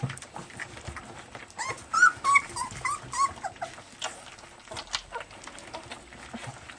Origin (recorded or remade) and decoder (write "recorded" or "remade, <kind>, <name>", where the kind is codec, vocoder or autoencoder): recorded